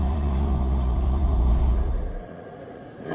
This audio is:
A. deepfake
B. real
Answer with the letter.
A